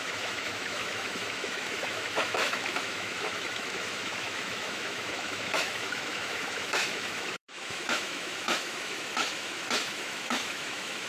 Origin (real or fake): fake